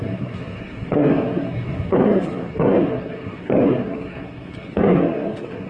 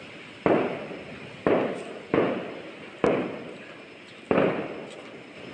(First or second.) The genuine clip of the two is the second